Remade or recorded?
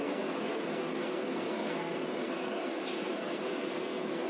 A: remade